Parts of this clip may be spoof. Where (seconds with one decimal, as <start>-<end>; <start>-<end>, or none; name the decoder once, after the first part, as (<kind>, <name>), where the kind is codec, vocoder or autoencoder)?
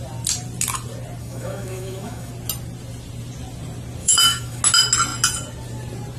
1.2-2.3 (autoencoder, DAC-VAE); 4.0-4.6